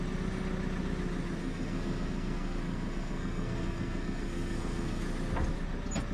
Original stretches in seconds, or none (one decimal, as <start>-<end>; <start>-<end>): 0.0-1.4; 5.0-6.1